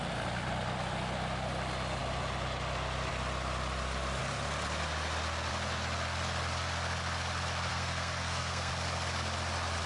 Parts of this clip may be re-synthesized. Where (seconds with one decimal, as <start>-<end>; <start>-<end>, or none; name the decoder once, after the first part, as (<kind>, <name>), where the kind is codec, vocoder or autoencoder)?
7.7-8.7 (codec, SNAC)